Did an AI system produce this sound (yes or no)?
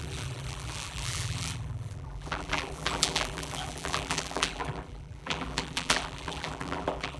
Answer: yes